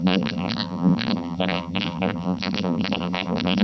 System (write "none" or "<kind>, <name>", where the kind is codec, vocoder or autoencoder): vocoder, BigVGAN v2